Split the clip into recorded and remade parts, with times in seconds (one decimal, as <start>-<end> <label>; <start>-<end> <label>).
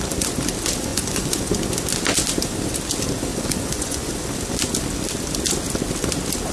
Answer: 0.0-0.9 recorded; 0.9-1.5 remade; 1.5-3.3 recorded; 3.3-4.1 remade; 4.1-6.5 recorded